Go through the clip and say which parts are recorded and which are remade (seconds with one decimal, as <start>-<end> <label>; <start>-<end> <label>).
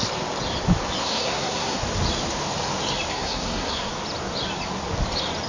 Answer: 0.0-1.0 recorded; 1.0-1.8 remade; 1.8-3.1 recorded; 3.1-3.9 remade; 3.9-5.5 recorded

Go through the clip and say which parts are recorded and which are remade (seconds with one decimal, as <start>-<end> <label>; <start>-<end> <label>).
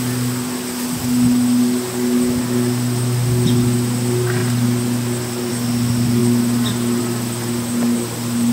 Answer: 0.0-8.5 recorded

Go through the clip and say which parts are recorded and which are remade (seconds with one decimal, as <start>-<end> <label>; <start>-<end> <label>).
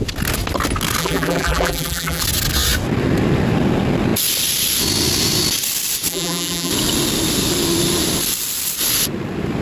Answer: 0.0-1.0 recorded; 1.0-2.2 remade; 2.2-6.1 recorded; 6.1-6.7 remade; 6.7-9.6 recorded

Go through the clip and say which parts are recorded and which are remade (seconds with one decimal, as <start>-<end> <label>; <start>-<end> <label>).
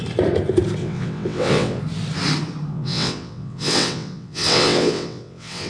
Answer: 0.0-0.8 recorded; 0.8-1.8 remade; 1.8-2.7 recorded; 2.7-5.7 remade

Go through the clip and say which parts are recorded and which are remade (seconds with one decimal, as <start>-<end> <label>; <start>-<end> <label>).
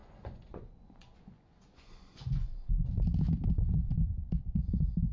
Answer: 0.0-2.7 remade; 2.7-5.1 recorded